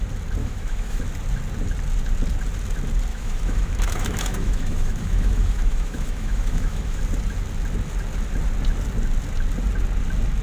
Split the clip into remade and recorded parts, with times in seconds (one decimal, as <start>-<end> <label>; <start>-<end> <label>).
0.0-0.4 recorded; 0.4-1.0 remade; 1.0-3.1 recorded; 3.1-7.0 remade; 7.0-10.4 recorded